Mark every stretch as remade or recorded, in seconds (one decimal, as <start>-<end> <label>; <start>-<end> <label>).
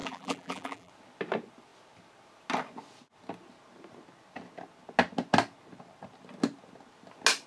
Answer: 0.0-0.9 remade; 0.9-7.5 recorded